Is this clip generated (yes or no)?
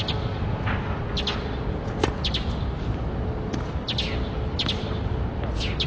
no